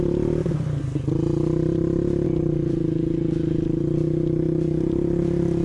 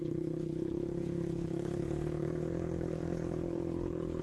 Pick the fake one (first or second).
second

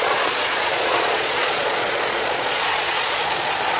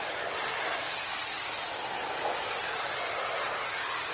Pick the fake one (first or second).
first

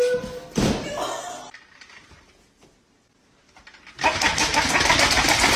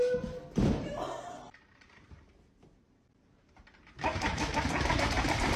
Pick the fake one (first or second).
second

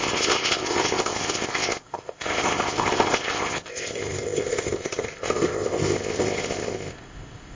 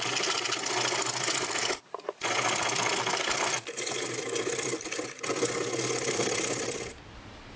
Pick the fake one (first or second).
first